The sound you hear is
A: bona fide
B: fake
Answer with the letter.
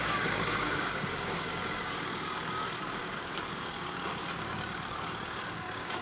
B